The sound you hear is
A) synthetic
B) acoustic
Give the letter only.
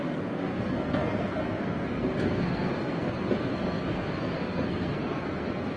A